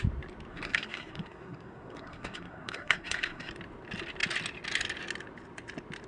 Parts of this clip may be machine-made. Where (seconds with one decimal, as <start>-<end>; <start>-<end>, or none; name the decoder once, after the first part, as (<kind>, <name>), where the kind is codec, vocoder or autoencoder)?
0.5-3.5 (codec, SNAC)